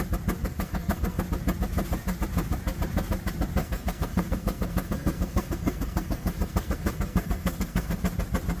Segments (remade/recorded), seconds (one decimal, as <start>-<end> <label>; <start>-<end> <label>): 0.0-0.4 recorded; 0.4-1.2 remade; 1.2-3.6 recorded; 3.6-8.0 remade; 8.0-8.6 recorded